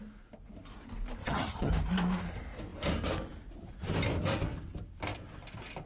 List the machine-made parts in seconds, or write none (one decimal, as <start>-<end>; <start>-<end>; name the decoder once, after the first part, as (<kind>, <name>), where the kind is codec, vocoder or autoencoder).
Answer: 1.2-1.7 (vocoder, HiFi-GAN)